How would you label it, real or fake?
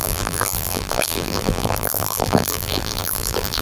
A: fake